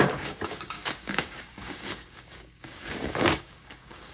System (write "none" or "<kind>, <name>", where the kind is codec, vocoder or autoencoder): codec, DAC